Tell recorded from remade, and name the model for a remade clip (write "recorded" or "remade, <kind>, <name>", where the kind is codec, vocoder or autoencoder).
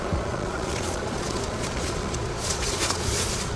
remade, vocoder, Vocos